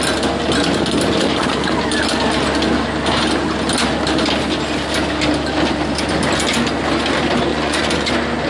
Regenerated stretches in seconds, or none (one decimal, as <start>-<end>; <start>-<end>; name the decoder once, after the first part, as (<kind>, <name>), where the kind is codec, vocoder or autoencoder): 7.5-8.1 (vocoder, Vocos)